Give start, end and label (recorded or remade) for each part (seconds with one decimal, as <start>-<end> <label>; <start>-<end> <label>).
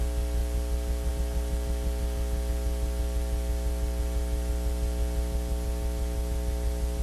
0.0-7.0 recorded